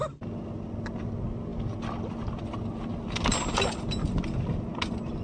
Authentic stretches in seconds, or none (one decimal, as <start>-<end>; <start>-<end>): 0.0-5.2